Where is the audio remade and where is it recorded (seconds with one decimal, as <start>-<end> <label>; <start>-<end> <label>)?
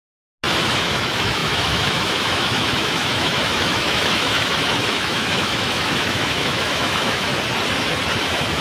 0.0-0.6 recorded; 0.6-7.3 remade; 7.3-8.2 recorded; 8.2-8.6 remade